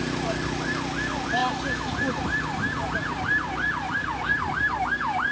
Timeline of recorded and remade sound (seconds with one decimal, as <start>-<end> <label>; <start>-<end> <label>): 0.0-5.3 recorded